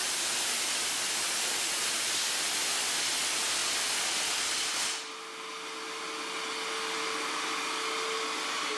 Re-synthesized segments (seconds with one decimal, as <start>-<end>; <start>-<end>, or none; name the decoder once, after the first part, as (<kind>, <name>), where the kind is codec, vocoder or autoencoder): none